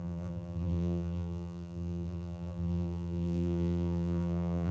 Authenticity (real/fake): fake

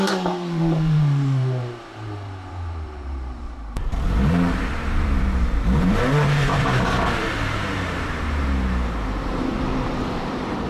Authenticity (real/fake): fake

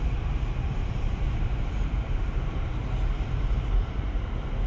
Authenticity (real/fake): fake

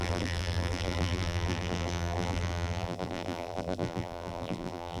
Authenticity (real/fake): fake